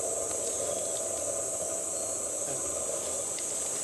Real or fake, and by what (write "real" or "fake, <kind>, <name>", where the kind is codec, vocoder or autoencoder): real